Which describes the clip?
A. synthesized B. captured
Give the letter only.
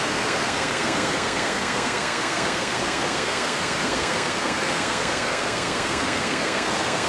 A